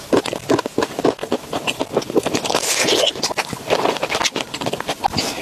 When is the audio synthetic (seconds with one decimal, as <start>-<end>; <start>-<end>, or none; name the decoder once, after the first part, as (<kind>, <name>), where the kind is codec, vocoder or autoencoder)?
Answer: none